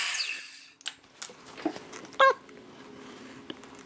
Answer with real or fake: real